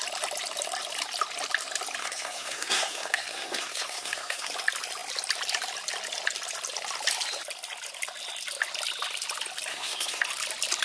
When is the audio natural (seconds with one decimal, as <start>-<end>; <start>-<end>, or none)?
0.0-2.0; 4.5-9.7; 10.2-10.8